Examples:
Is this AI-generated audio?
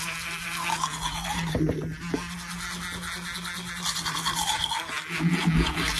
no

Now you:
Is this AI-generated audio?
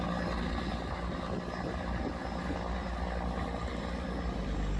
no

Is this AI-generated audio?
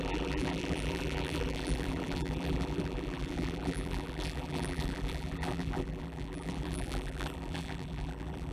yes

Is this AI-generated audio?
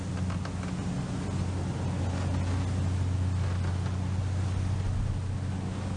no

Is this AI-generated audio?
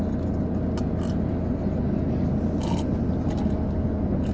no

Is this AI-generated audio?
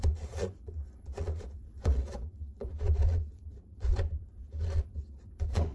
yes